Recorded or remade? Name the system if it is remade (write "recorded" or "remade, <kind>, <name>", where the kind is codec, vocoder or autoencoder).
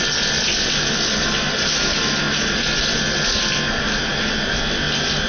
recorded